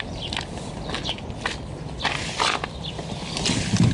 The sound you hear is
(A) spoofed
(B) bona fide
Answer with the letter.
B